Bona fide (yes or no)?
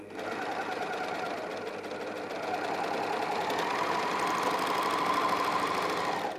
yes